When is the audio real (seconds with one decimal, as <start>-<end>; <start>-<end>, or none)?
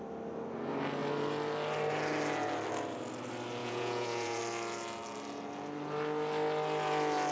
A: 0.0-3.6; 4.4-7.3